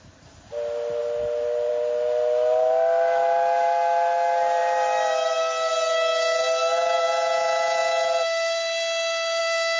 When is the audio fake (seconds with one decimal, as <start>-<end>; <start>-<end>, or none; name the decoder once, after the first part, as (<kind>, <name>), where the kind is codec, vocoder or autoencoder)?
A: none